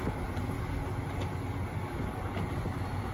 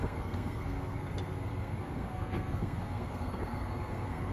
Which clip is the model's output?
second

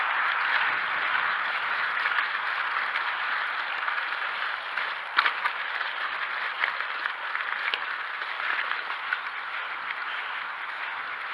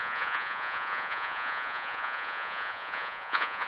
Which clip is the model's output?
second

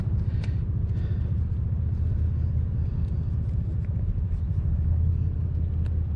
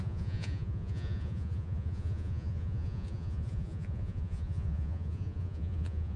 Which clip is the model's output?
second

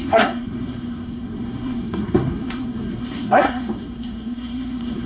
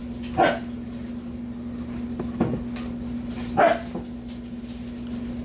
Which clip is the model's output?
first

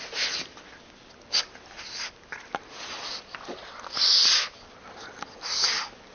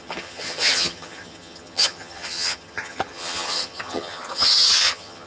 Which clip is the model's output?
second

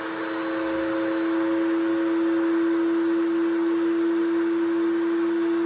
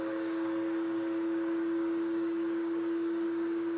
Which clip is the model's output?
second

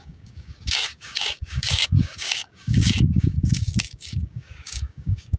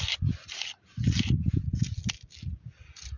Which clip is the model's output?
first